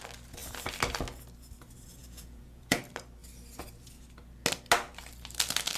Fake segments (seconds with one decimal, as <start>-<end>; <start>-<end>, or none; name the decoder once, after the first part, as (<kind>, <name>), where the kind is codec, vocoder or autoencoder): 2.0-2.8 (vocoder, Vocos)